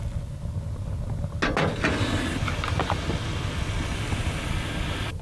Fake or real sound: real